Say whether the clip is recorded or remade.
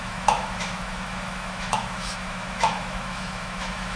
remade